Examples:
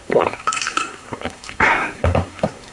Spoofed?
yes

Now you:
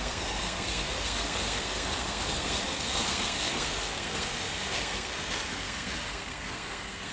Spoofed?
yes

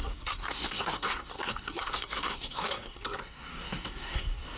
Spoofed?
yes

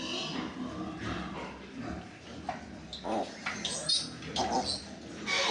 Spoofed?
no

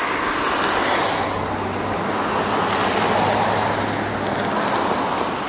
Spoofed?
no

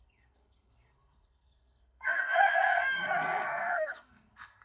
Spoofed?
yes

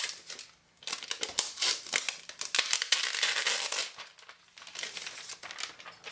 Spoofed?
no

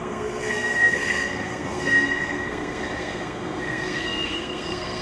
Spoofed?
yes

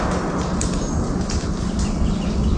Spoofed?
no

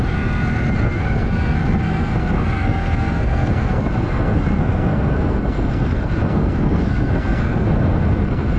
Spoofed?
yes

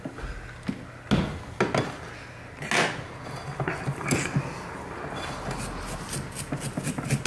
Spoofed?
no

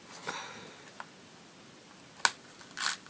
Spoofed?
no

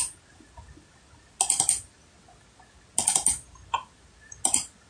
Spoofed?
no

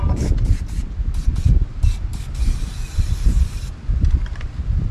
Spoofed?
no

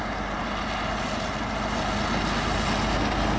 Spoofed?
no